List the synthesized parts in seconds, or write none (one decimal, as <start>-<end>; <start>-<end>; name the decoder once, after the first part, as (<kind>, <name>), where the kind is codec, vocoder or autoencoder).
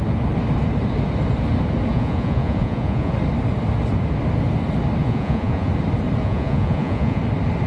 1.9-3.1 (vocoder, Vocos); 5.0-5.7; 6.2-7.2